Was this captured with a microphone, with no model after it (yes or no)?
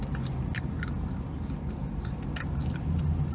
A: yes